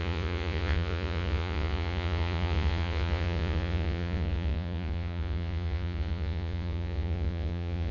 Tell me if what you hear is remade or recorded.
remade